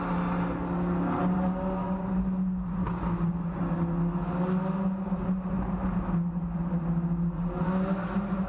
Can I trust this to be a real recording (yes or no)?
yes